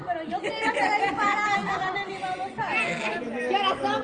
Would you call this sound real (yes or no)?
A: yes